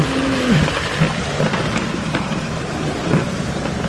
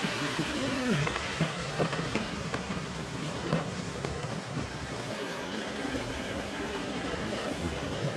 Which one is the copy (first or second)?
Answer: second